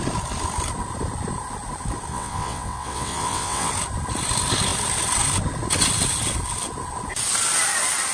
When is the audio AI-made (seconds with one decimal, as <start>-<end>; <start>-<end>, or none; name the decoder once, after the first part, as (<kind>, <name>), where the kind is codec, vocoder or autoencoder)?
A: 2.1-3.7 (vocoder, WaveNeXt)